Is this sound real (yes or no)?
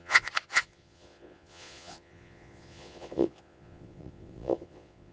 no